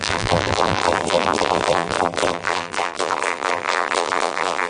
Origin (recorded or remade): remade